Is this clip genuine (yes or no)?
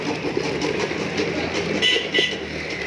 yes